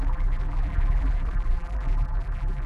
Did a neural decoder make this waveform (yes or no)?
yes